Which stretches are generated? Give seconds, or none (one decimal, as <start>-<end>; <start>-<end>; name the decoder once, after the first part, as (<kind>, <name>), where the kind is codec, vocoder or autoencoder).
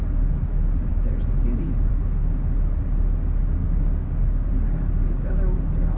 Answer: 3.6-4.5 (codec, DAC)